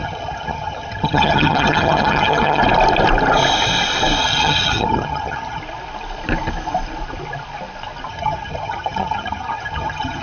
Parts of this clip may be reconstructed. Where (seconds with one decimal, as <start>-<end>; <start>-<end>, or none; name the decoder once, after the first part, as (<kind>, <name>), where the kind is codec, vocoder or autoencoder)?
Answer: 0.0-2.6 (vocoder, HiFi-GAN); 4.2-5.6; 8.1-10.2